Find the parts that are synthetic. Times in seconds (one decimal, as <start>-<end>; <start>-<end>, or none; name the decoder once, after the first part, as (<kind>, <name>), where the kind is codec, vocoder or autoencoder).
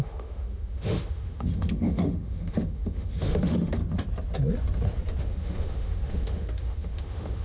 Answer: 0.0-3.8 (autoencoder, DAC-VAE); 5.2-7.4